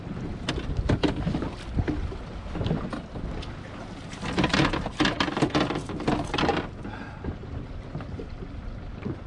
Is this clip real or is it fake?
real